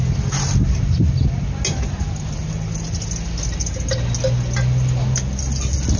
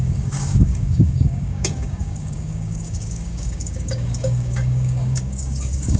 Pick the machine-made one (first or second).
second